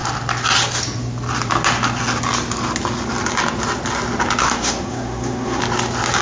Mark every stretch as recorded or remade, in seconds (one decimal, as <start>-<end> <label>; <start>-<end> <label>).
0.0-4.4 recorded; 4.4-5.6 remade; 5.6-6.2 recorded